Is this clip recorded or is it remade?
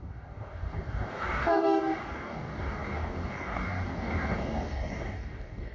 remade